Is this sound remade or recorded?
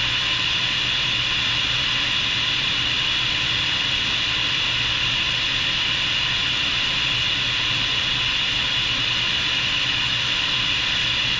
recorded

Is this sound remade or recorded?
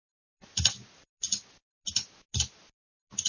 recorded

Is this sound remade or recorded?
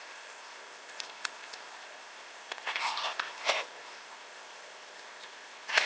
remade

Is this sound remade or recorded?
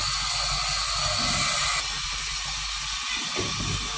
recorded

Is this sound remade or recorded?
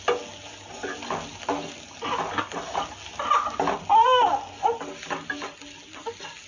recorded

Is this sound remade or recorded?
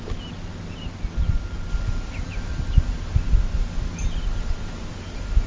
recorded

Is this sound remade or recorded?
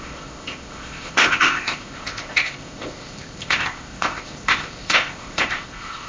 remade